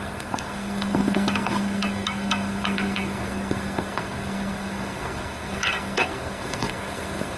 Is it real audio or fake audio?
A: fake